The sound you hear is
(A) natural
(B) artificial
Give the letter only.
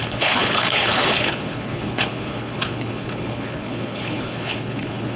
B